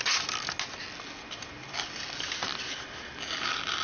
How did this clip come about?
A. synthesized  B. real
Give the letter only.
B